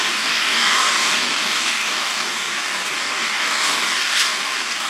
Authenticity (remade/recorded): remade